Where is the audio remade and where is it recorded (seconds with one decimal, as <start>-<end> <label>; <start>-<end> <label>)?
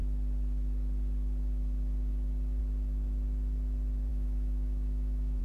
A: 0.0-4.1 recorded; 4.1-5.4 remade